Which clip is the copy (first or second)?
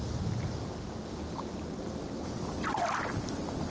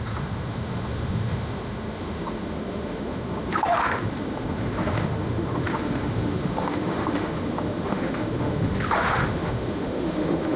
second